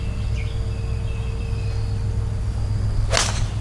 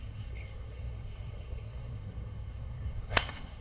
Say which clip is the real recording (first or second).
first